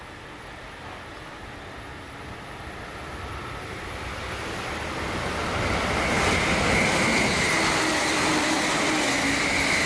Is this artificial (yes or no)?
no